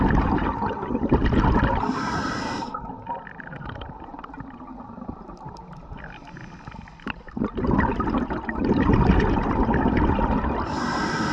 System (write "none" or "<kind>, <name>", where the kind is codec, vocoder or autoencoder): none